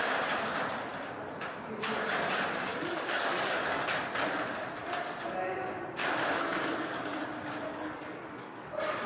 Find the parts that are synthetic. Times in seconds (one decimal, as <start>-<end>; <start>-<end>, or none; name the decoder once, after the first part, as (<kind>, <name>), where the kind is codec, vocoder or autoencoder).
2.7-3.8 (codec, DAC); 6.0-7.2; 7.7-8.7

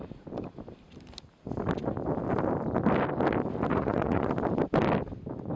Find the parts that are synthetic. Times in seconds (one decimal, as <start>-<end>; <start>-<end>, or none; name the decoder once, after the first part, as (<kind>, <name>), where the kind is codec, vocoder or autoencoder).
3.7-4.3 (vocoder, Vocos)

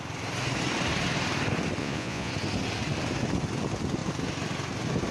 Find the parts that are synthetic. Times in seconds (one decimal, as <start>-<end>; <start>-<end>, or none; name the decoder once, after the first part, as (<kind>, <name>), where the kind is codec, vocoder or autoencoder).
1.8-2.3 (vocoder, Vocos)

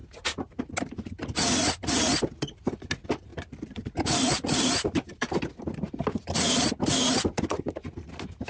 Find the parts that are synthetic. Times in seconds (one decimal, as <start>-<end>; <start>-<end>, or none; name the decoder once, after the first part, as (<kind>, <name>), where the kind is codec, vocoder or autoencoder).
3.3-6.7 (vocoder, BigVGAN v2)

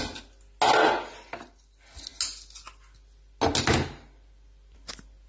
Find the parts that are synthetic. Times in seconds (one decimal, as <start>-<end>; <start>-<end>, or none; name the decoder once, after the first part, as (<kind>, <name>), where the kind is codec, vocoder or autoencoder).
none